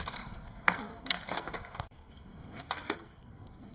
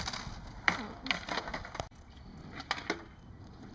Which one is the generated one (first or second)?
first